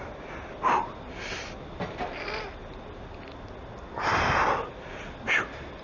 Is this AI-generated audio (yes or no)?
no